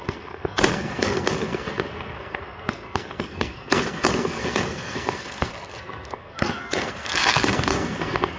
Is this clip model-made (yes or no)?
yes